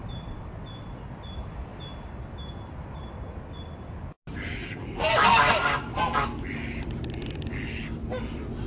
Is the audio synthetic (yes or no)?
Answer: no